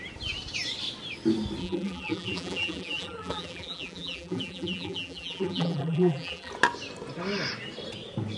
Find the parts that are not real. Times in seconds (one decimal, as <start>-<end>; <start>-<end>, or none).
1.6-6.5